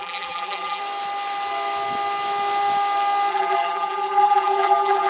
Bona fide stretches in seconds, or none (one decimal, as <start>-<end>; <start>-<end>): 0.8-3.3